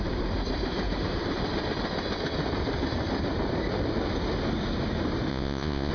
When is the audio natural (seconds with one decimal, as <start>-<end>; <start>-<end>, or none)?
0.0-5.3